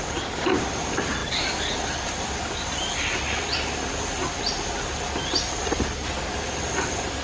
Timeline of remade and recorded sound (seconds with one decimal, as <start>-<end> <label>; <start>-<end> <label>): 0.0-7.2 recorded